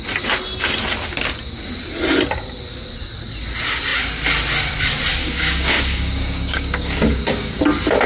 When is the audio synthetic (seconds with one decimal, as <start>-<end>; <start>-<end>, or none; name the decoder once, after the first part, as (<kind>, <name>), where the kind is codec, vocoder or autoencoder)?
5.2-7.6 (codec, DAC)